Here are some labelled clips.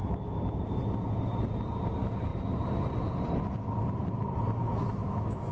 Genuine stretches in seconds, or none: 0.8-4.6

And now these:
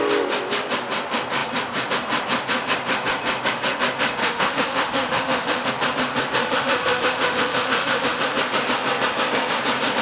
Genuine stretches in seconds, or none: 0.0-4.2; 5.7-6.4; 8.2-10.0

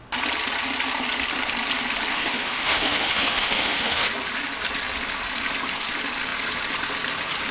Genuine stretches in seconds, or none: 0.0-2.1; 4.1-7.5

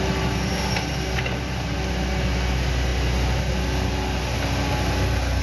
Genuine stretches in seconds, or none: 0.0-5.4

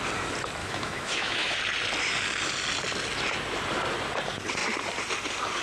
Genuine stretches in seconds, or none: 0.0-0.6; 1.6-5.6